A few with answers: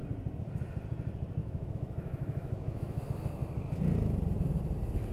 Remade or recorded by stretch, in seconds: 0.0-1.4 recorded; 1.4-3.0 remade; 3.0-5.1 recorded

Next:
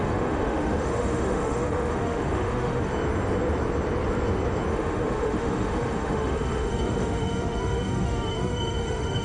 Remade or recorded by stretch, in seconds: 0.0-2.9 remade; 2.9-4.7 recorded; 4.7-9.2 remade

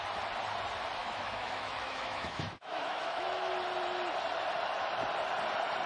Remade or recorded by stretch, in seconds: 0.0-1.0 recorded; 1.0-3.5 remade; 3.5-5.9 recorded

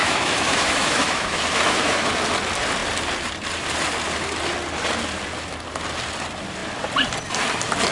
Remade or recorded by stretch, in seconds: 0.0-2.1 remade; 2.1-7.9 recorded

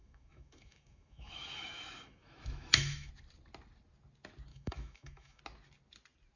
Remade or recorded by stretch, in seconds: 0.0-3.1 remade; 3.1-4.5 recorded; 4.5-5.4 remade; 5.4-6.4 recorded

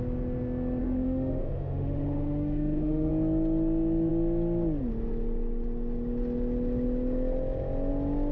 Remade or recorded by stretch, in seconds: 0.0-0.8 recorded; 0.8-3.1 remade; 3.1-8.3 recorded

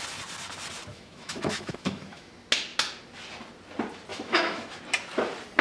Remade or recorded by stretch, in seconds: 0.0-0.9 recorded; 0.9-2.3 remade; 2.3-4.1 recorded; 4.1-4.8 remade; 4.8-5.6 recorded